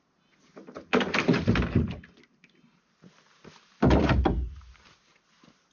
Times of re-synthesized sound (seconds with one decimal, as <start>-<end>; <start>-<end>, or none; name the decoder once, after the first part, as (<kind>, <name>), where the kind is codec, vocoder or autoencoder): none